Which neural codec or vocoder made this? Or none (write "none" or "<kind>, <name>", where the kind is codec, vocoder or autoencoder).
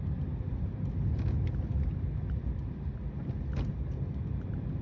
none